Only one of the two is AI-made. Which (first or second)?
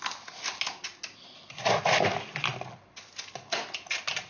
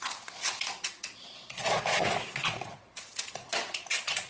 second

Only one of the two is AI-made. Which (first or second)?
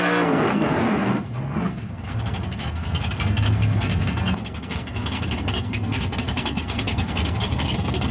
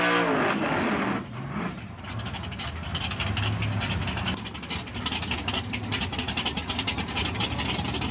first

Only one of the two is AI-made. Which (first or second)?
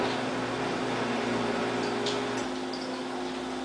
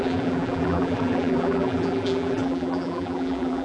second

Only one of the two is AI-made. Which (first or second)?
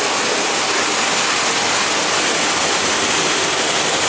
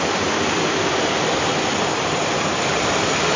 second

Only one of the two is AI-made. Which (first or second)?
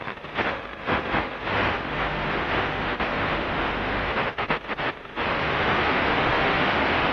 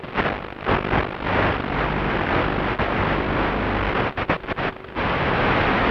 first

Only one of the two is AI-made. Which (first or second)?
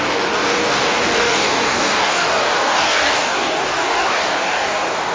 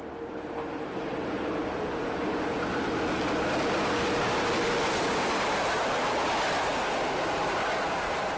first